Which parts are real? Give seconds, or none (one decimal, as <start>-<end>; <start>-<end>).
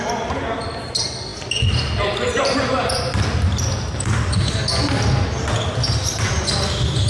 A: 0.0-7.1